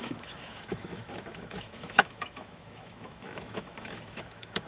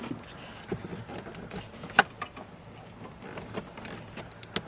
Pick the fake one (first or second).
first